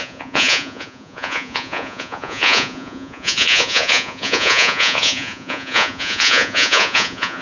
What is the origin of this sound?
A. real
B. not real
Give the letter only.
B